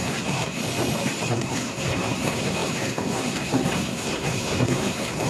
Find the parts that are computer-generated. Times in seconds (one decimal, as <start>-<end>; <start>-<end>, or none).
0.0-0.6; 1.3-5.3